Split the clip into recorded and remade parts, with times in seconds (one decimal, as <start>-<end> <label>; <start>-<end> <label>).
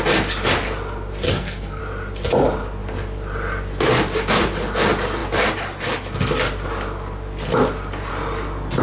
0.0-1.3 recorded; 1.3-1.8 remade; 1.8-8.8 recorded